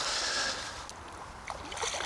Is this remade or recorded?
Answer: recorded